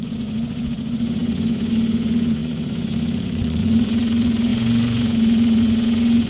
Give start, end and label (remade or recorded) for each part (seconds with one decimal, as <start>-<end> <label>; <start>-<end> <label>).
0.0-6.3 remade